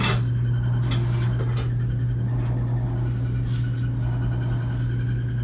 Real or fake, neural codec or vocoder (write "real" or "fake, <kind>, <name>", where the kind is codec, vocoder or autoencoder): real